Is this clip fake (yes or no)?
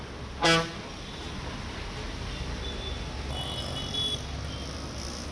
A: no